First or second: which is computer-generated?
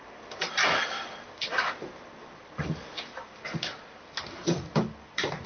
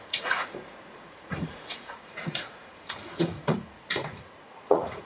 second